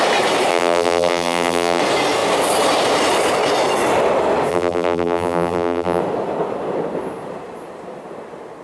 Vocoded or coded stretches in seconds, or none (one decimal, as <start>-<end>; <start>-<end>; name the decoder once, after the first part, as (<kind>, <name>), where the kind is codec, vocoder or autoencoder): 0.5-1.8 (vocoder, BigVGAN v2); 4.5-6.0